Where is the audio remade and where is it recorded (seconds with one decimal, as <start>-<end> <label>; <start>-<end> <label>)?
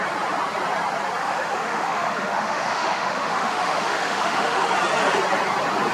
0.0-1.2 recorded; 1.2-4.7 remade; 4.7-5.9 recorded